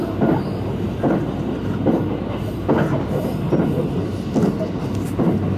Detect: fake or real real